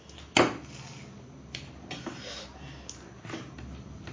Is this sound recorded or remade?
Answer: recorded